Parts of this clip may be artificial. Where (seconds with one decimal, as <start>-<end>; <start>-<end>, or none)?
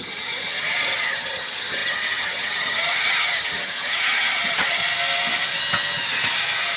0.0-4.8